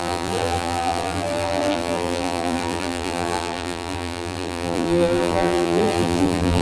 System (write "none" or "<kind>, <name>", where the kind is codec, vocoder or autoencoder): vocoder, BigVGAN v2